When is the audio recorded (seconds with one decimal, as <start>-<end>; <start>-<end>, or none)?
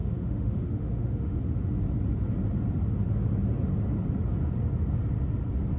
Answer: 1.4-5.8